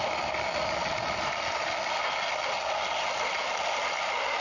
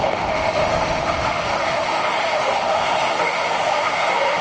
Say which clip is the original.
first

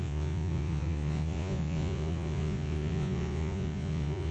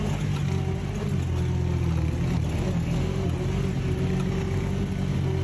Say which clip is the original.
second